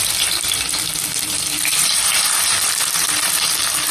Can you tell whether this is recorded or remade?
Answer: remade